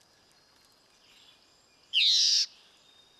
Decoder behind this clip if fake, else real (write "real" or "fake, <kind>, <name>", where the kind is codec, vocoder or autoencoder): fake, vocoder, BigVGAN v2